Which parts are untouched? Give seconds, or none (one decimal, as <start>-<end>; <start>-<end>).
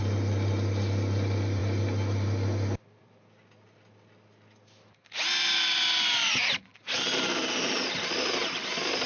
0.0-9.1